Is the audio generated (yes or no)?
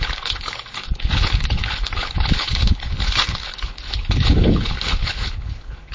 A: yes